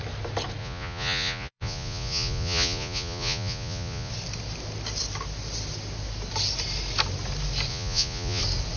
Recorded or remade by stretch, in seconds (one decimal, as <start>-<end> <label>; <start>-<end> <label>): 0.0-0.6 recorded; 0.6-4.1 remade; 4.1-7.7 recorded; 7.7-8.4 remade; 8.4-8.8 recorded